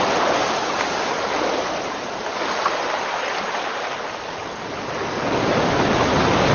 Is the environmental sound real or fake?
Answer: real